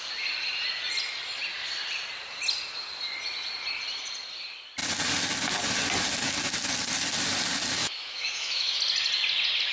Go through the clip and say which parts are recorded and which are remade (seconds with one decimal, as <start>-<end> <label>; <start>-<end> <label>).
0.0-7.8 recorded; 7.8-8.8 remade; 8.8-9.7 recorded